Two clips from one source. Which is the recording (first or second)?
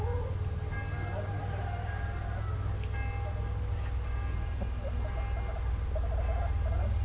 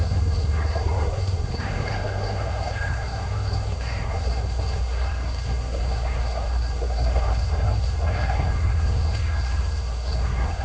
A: first